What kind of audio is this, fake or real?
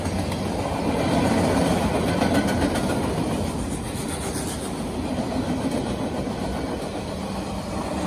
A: real